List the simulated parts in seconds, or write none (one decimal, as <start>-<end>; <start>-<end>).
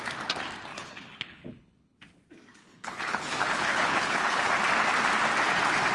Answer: 0.7-2.0; 2.6-4.5